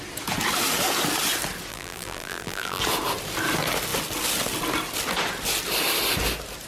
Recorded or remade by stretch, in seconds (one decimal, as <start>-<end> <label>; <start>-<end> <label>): 0.0-1.7 recorded; 1.7-2.8 remade; 2.8-6.7 recorded